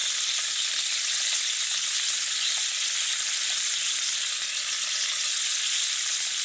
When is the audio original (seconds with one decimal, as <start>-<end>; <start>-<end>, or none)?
0.0-6.4